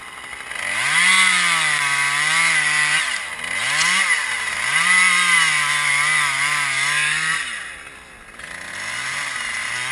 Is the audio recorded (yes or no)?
yes